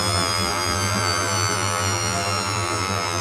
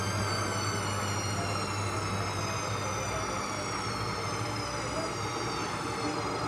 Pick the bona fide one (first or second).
second